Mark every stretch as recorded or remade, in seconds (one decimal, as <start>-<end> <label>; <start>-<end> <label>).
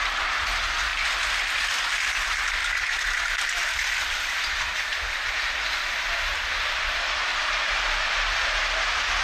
0.0-2.6 recorded; 2.6-3.9 remade; 3.9-7.3 recorded; 7.3-8.6 remade; 8.6-9.2 recorded